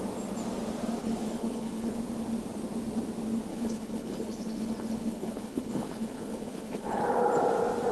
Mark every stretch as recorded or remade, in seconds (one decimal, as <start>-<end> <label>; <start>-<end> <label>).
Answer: 0.0-1.0 recorded; 1.0-1.9 remade; 1.9-3.5 recorded; 3.5-7.0 remade; 7.0-7.9 recorded